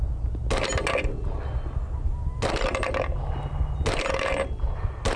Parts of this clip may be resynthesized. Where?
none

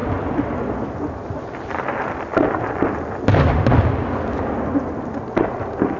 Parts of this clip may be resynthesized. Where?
0.0-1.4; 2.3-4.1

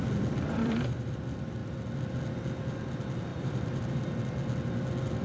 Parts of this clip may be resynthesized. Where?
0.6-1.1; 3.3-4.0

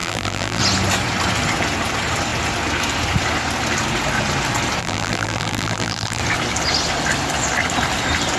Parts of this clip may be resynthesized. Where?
0.0-0.6; 4.8-6.2